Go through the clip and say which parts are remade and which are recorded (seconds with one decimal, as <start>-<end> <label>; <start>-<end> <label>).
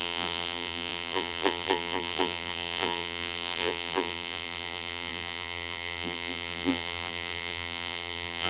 0.0-8.5 remade